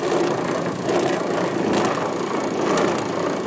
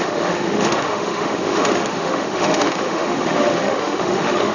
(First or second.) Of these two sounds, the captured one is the first